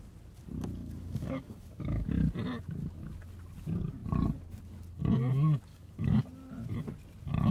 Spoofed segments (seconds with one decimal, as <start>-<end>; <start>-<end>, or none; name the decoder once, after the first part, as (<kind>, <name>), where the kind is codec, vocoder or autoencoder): 0.8-2.1 (codec, DAC); 5.7-6.2